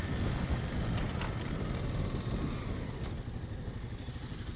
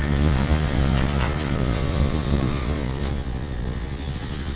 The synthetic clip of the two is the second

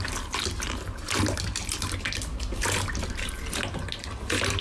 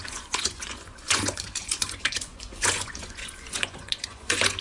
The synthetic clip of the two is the second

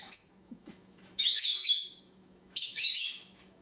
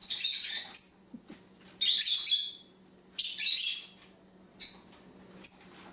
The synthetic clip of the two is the first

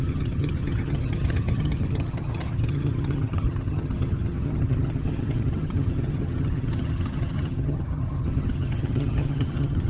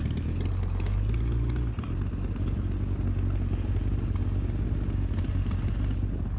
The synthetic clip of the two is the first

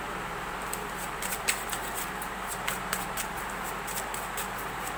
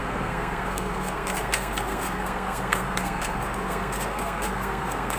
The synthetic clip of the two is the second